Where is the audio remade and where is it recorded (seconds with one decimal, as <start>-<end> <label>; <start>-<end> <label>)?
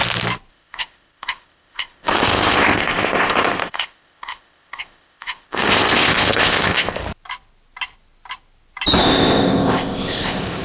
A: 0.0-0.5 recorded; 0.5-7.0 remade; 7.0-9.0 recorded; 9.0-10.6 remade